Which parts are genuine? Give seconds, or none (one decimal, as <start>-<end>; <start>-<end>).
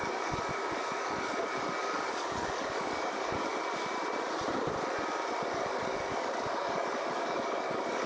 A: 3.5-5.5